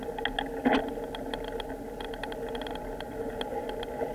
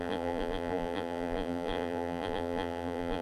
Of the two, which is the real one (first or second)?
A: first